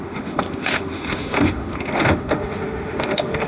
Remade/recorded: remade